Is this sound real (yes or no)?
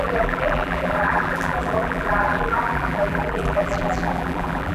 no